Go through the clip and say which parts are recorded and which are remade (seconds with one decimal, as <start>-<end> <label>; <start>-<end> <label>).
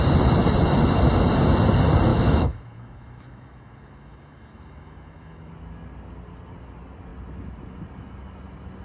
0.0-2.1 recorded; 2.1-5.5 remade; 5.5-8.8 recorded